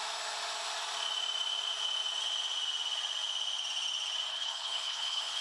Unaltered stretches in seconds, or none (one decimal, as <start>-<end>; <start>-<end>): 0.0-4.3